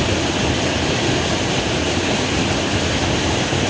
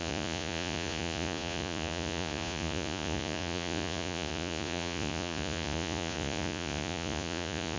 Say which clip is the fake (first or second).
second